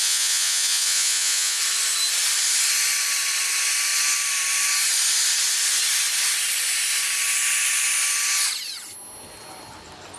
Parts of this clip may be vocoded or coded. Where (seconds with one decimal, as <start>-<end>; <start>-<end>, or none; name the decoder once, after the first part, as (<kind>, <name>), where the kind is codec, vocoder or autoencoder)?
0.0-1.6 (vocoder, Vocos)